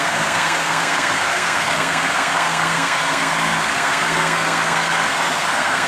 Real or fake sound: fake